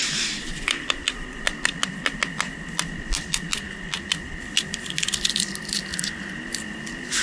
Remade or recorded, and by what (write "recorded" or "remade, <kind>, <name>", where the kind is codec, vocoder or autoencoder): recorded